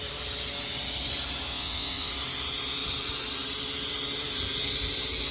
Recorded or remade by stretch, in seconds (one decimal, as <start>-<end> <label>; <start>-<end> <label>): 0.0-1.5 recorded; 1.5-2.1 remade; 2.1-5.3 recorded